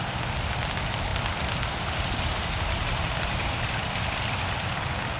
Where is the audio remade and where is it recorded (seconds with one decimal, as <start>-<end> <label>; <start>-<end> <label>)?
0.0-5.2 recorded